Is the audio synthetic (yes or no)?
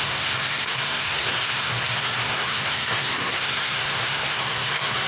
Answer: yes